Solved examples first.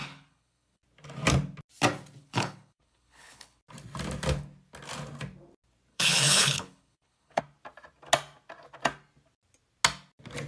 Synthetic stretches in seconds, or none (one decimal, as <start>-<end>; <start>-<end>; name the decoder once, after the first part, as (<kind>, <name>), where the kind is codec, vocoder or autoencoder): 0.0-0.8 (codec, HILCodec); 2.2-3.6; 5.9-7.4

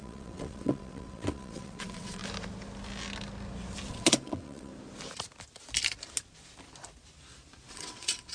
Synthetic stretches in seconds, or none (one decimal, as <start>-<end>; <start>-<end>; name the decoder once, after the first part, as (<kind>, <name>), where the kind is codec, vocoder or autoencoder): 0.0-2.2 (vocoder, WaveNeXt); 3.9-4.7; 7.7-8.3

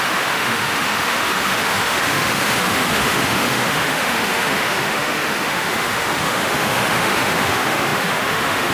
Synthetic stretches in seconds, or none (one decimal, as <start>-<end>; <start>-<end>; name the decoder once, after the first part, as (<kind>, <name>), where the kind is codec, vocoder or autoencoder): 0.0-8.7 (autoencoder, DAC-VAE)

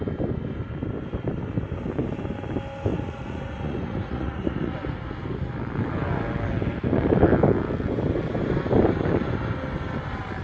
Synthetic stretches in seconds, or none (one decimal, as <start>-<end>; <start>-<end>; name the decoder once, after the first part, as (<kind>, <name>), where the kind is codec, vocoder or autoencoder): 2.9-4.7 (vocoder, Vocos)

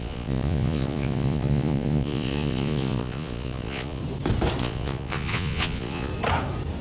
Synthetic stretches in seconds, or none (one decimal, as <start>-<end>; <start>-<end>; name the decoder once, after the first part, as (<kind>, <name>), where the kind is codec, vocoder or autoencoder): 0.0-4.0 (vocoder, Vocos); 4.6-6.1

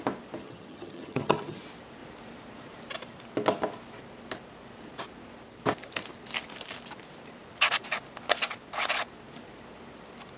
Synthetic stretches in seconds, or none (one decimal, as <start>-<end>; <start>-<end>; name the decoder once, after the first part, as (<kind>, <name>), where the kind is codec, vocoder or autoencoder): 0.4-1.6 (vocoder, HiFi-GAN)

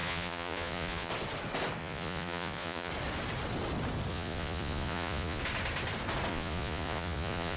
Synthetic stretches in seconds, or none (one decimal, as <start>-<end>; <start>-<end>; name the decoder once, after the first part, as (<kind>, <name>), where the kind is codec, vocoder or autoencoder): 0.0-1.1 (vocoder, Vocos); 1.8-2.9; 4.1-5.4; 6.3-7.6

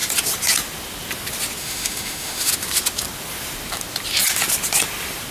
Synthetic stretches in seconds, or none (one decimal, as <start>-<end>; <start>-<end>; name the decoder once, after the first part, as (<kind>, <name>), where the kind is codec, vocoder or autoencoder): 1.6-2.5 (autoencoder, DAC-VAE)